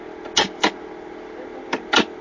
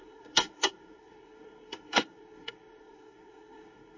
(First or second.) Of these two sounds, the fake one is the second